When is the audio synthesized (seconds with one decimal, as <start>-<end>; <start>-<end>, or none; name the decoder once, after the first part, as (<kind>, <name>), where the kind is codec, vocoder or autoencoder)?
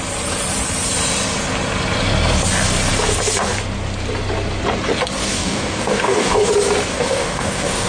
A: 5.3-6.5 (codec, DAC); 6.9-7.9